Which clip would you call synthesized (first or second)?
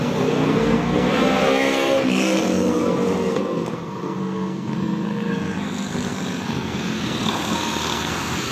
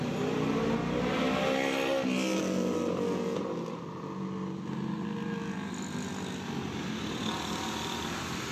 first